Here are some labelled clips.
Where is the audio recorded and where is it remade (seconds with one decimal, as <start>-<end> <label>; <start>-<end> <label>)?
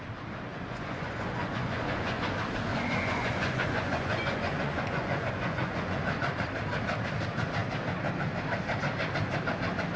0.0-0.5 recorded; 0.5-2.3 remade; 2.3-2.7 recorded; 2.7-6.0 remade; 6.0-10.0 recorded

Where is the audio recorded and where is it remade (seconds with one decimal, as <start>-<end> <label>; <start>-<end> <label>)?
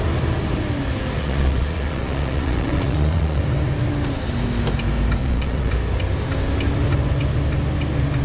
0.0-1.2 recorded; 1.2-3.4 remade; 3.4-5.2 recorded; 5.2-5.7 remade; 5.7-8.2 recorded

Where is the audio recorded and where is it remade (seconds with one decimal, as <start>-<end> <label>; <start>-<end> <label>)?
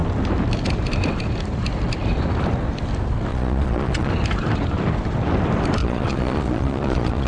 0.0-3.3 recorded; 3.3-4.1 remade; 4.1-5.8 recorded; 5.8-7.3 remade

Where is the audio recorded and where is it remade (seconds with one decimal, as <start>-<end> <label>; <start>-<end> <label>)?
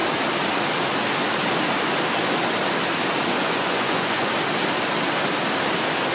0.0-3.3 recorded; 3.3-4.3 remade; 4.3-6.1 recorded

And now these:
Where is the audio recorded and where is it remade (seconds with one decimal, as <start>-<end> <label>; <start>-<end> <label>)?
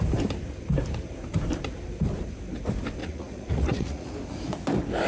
0.0-3.0 recorded; 3.0-4.1 remade; 4.1-5.1 recorded